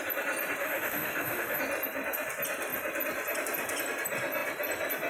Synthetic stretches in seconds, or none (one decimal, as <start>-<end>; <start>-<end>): 0.6-1.6